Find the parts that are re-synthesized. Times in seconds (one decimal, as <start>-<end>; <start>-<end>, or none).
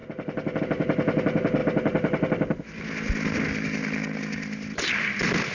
none